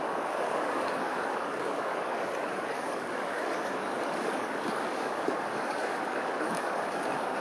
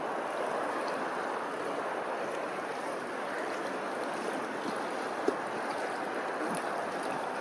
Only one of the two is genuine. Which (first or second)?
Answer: second